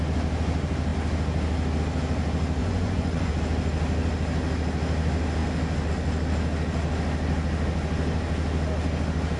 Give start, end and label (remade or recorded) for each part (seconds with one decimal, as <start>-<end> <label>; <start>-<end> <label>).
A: 0.0-2.6 recorded; 2.6-3.3 remade; 3.3-9.4 recorded